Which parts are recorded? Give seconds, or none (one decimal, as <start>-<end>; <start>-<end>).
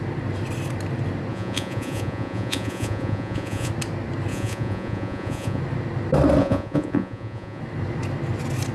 0.0-1.3; 3.7-4.3; 5.6-6.4; 7.6-8.7